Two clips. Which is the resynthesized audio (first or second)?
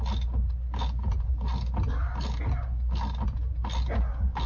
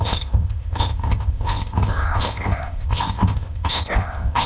second